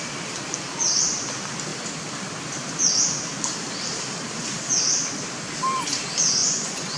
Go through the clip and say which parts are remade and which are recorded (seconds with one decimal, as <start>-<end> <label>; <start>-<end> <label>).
0.0-6.4 recorded; 6.4-7.0 remade